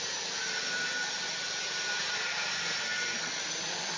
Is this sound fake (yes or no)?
no